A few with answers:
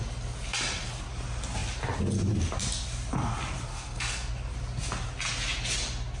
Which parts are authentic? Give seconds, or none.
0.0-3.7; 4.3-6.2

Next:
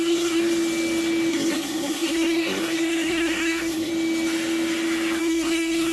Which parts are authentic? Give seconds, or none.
0.4-1.3; 3.9-5.2